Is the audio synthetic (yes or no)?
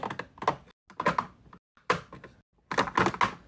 no